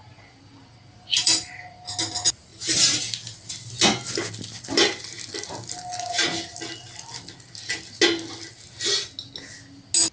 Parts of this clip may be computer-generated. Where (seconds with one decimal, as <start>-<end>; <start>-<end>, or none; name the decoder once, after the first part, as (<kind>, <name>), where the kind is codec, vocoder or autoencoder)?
0.0-1.8 (vocoder, BigVGAN v2); 2.5-3.0